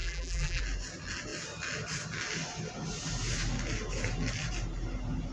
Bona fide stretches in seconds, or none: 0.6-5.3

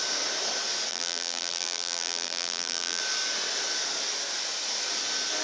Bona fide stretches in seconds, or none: 0.0-0.9; 3.0-5.4

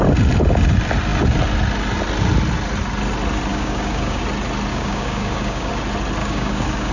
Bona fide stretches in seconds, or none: 0.0-3.5; 4.2-4.7; 5.7-6.2

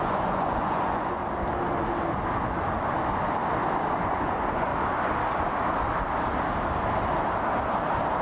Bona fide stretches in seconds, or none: 1.2-3.9; 4.7-8.2

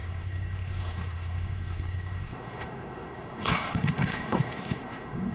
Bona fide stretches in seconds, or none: none

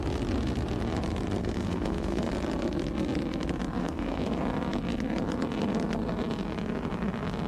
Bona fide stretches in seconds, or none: 0.0-1.4; 2.3-3.8; 4.4-7.5